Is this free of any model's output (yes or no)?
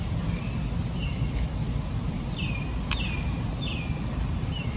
yes